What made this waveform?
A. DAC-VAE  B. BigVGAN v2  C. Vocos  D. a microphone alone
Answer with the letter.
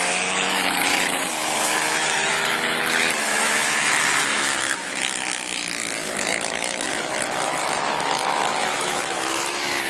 A